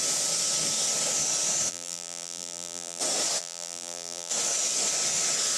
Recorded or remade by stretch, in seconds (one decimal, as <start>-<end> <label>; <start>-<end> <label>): 0.0-1.7 recorded; 1.7-3.0 remade; 3.0-3.4 recorded; 3.4-4.3 remade; 4.3-5.6 recorded